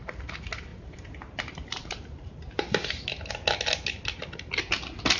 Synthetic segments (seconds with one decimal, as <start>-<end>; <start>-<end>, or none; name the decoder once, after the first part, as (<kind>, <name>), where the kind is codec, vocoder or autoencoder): 0.7-3.3 (vocoder, BigVGAN v2)